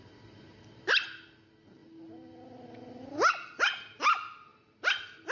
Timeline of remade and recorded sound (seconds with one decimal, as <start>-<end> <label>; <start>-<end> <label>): 0.0-5.3 recorded